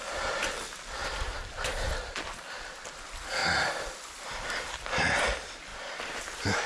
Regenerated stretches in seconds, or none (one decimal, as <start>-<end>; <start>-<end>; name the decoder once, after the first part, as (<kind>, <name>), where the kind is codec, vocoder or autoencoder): 1.0-1.9 (vocoder, BigVGAN v2); 5.7-6.2